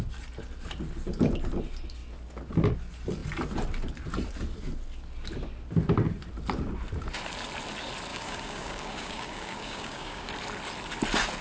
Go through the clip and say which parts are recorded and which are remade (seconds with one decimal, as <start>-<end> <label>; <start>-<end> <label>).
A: 0.0-8.1 recorded; 8.1-10.3 remade; 10.3-11.4 recorded